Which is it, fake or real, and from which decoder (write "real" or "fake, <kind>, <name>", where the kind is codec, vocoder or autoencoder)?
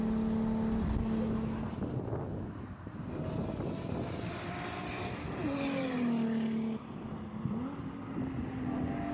real